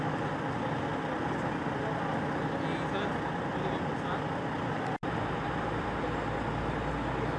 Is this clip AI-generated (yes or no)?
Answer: no